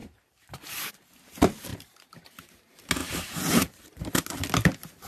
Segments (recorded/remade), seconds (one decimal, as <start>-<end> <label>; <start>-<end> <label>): 0.0-0.9 remade; 0.9-1.7 recorded; 1.7-2.5 remade; 2.5-3.0 recorded; 3.0-4.0 remade; 4.0-5.1 recorded